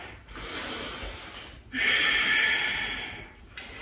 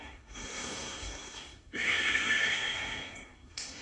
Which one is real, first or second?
first